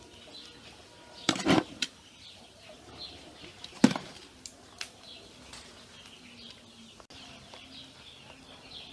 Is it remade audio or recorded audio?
recorded